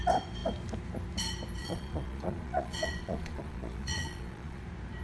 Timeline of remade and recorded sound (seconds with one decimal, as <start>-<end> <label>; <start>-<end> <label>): 0.0-1.6 recorded; 1.6-4.6 remade; 4.6-5.0 recorded